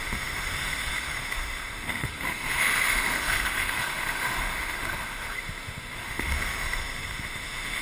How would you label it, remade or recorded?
remade